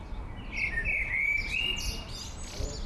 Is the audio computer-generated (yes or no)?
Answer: no